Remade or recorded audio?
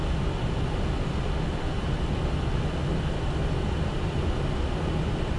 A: recorded